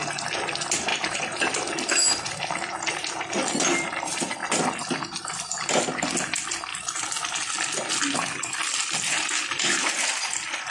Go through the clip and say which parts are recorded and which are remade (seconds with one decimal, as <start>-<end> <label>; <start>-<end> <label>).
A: 0.0-10.7 recorded